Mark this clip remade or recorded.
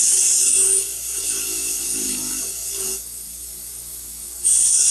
remade